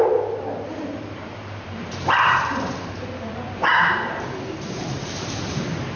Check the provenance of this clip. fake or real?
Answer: fake